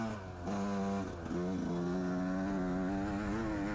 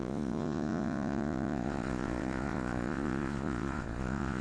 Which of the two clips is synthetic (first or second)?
second